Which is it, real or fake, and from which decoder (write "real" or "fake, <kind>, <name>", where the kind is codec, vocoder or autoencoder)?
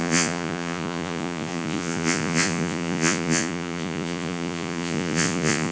fake, vocoder, Vocos